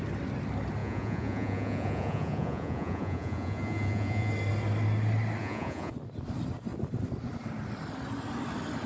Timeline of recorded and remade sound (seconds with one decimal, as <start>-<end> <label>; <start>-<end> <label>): 0.0-0.8 recorded; 0.8-4.3 remade; 4.3-5.4 recorded; 5.4-5.9 remade; 5.9-8.9 recorded